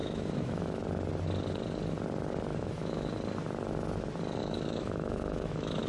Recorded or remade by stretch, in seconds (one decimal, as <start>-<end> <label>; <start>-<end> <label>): 0.0-0.8 remade; 0.8-2.5 recorded; 2.5-3.1 remade; 3.1-4.4 recorded; 4.4-5.9 remade